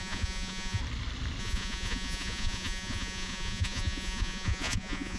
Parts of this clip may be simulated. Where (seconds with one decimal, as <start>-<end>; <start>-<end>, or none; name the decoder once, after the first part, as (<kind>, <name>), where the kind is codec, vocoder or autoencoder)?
0.0-0.8 (vocoder, Vocos); 1.4-5.2